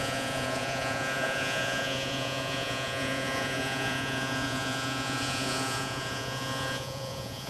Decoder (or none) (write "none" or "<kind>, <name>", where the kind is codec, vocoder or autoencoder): vocoder, Vocos